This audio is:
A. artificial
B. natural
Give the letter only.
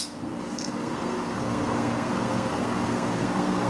A